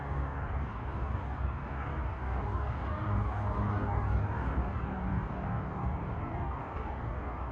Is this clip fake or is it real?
fake